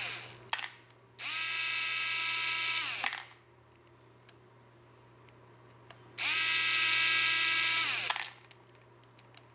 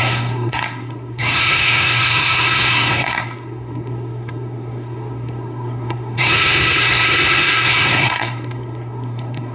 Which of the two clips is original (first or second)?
first